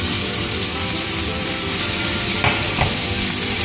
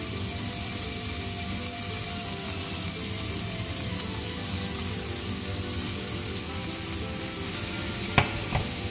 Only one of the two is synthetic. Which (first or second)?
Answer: first